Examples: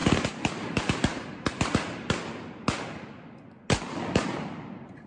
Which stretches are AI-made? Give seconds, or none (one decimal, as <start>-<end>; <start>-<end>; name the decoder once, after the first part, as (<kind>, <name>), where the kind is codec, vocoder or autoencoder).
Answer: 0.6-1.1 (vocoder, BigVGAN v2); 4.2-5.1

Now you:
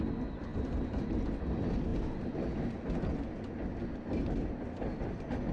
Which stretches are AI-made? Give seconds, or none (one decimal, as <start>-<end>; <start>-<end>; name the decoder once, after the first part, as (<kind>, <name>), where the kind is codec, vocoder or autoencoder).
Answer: 0.5-1.0 (vocoder, BigVGAN v2)

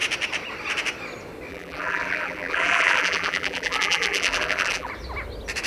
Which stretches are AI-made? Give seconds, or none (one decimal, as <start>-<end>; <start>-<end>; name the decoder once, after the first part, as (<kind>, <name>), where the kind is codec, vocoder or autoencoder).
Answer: 1.5-4.9 (vocoder, BigVGAN v2)